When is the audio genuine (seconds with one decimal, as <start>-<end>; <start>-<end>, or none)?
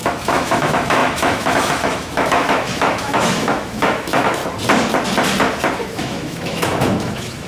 4.4-5.8